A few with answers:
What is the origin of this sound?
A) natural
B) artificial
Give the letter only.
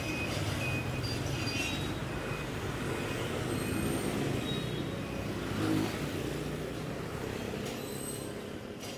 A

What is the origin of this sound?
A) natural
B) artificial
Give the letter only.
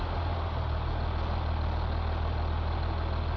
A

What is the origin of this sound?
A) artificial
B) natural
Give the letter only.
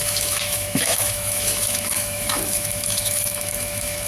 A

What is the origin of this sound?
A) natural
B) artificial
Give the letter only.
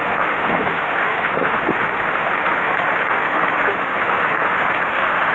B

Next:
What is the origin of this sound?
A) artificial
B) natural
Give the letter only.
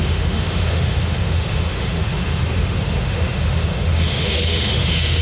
A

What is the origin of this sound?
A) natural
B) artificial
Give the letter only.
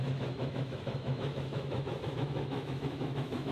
B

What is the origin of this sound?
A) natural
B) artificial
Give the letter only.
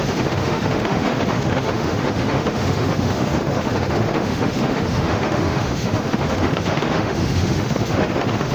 B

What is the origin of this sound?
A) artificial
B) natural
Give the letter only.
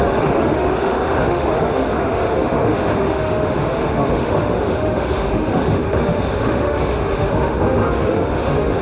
A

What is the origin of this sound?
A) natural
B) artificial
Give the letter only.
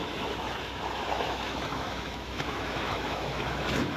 B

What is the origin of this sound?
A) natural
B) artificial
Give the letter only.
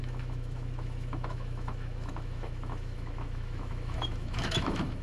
B